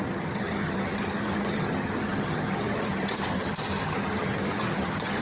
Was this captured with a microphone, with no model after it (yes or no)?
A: no